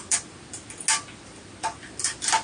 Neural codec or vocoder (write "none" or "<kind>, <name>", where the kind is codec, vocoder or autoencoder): none